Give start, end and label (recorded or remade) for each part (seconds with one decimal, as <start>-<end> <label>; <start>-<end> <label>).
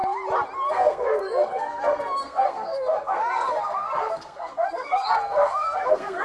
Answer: 0.0-0.7 recorded; 0.7-6.2 remade